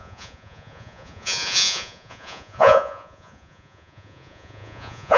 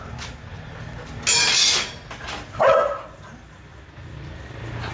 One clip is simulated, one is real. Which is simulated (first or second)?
first